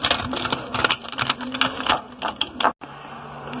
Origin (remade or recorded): recorded